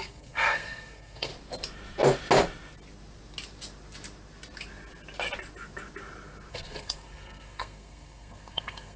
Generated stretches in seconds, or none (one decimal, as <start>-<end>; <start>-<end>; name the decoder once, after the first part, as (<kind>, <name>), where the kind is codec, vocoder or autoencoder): 0.0-1.3 (codec, SNAC); 6.5-9.0